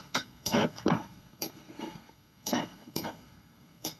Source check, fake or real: fake